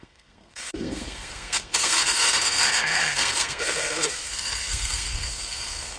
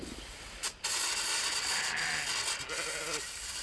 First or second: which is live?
second